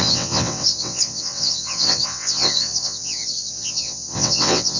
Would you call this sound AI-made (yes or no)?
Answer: yes